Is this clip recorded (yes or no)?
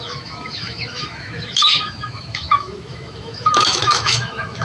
no